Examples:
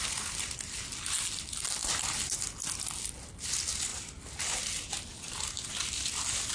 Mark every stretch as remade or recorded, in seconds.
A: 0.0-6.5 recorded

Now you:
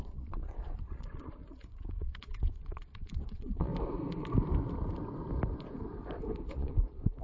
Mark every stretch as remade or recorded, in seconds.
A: 0.0-3.7 remade; 3.7-6.5 recorded; 6.5-7.2 remade

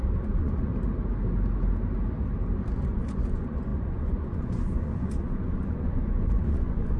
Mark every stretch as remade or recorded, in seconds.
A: 0.0-0.7 remade; 0.7-2.7 recorded; 2.7-7.0 remade